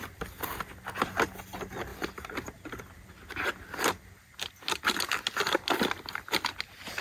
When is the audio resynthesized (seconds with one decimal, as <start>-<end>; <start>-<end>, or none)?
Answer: 1.9-2.8

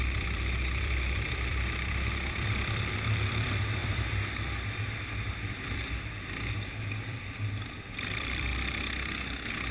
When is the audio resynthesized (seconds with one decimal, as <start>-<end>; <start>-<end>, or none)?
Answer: 0.0-8.5